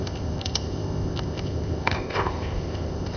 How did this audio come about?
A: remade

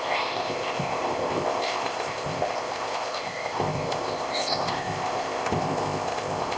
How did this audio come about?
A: remade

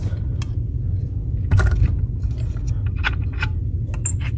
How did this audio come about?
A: recorded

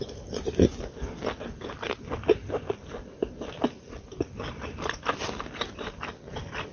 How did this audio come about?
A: recorded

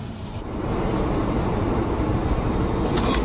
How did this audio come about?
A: recorded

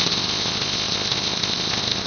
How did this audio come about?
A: remade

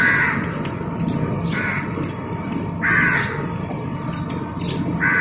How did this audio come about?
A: recorded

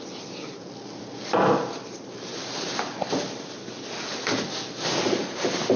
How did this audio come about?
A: recorded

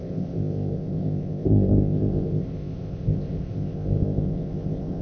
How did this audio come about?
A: remade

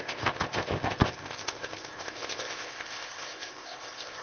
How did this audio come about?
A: remade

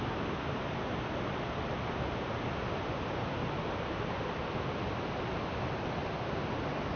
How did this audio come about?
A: recorded